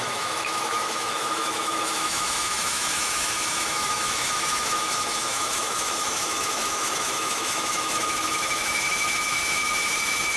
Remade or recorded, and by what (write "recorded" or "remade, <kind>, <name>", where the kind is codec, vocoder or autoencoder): remade, autoencoder, DAC-VAE